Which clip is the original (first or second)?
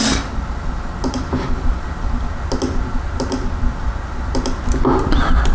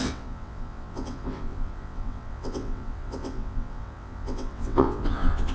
first